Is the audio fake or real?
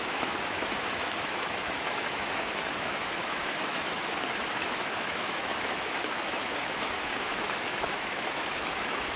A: fake